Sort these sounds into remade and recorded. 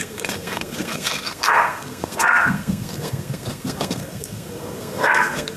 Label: remade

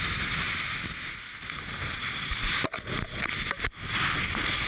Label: recorded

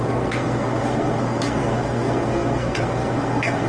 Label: remade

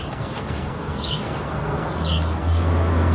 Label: remade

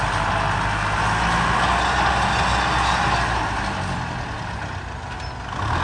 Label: recorded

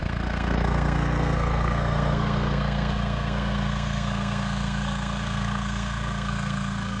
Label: remade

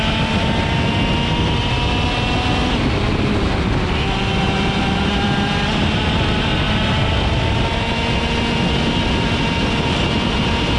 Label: recorded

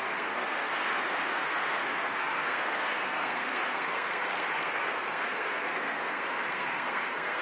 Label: remade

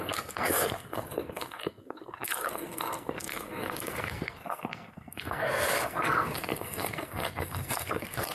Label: remade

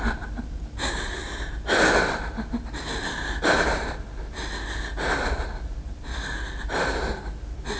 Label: recorded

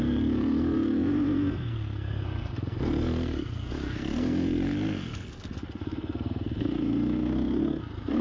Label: remade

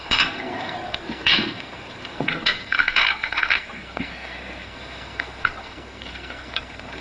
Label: remade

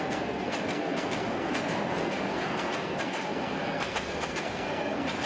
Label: remade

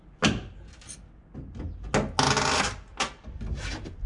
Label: recorded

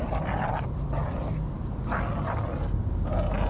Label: recorded